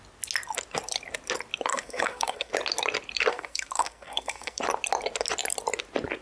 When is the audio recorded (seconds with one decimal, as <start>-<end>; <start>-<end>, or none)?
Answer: 0.0-1.7; 2.5-3.3; 4.6-6.2